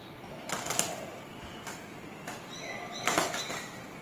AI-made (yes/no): no